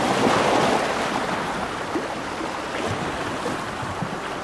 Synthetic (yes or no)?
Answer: no